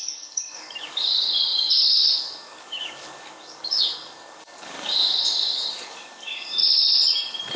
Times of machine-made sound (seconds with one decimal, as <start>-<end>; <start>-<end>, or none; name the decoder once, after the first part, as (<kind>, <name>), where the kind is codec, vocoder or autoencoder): 0.0-6.6 (codec, DAC)